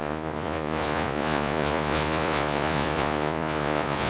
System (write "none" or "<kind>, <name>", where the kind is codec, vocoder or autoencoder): vocoder, Vocos